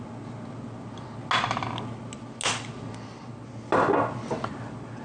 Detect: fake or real real